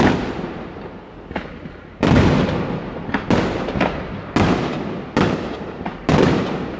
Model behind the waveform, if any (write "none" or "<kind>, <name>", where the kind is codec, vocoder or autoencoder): none